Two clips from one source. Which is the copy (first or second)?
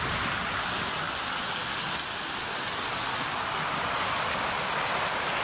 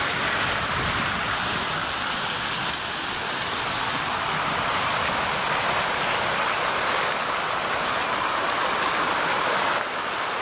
second